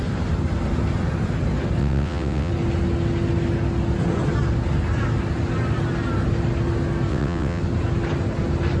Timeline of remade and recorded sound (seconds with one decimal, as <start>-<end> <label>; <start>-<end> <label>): 0.0-1.8 recorded; 1.8-2.5 remade; 2.5-7.1 recorded; 7.1-7.6 remade; 7.6-8.8 recorded